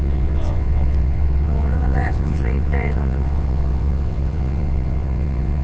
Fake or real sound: fake